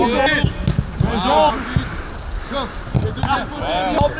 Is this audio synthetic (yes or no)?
no